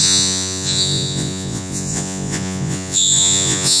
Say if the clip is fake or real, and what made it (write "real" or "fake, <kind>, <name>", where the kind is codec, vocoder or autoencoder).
fake, vocoder, Vocos